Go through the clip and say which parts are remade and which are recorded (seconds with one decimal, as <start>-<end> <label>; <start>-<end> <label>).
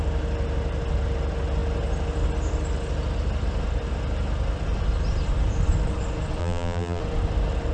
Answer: 0.0-6.4 recorded; 6.4-7.0 remade; 7.0-7.7 recorded